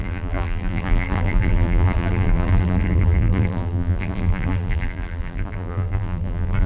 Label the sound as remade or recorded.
remade